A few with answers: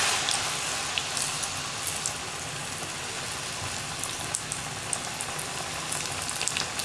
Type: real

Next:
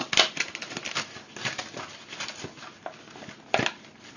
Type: real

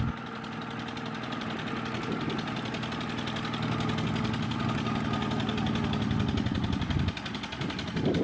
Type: real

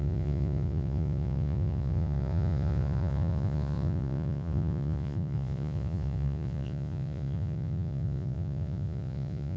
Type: fake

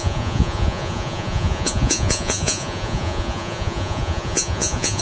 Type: fake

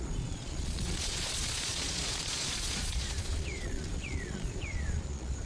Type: fake